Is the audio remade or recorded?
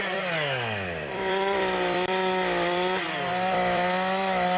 remade